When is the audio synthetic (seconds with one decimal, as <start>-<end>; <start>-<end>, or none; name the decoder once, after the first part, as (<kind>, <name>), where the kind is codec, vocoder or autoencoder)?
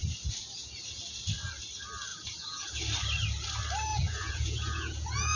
2.1-2.8 (vocoder, Vocos); 3.9-5.4